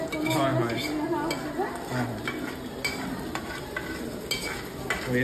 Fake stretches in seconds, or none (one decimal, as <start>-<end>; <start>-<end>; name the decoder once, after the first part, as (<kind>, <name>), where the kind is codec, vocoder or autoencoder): none